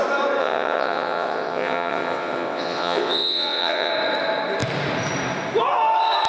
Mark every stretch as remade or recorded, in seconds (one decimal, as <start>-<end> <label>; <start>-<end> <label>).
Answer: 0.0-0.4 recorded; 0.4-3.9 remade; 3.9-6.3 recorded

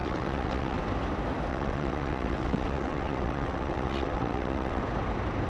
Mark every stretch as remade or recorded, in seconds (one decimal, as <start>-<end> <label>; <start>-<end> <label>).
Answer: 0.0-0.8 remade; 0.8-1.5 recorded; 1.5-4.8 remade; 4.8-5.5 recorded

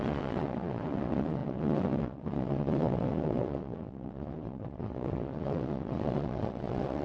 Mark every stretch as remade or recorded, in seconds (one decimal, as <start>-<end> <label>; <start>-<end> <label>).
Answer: 0.0-7.0 remade